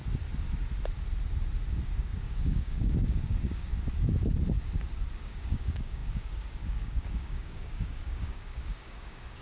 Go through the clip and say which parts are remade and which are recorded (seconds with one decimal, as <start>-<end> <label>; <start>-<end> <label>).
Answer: 0.0-2.0 recorded; 2.0-3.7 remade; 3.7-5.1 recorded; 5.1-9.4 remade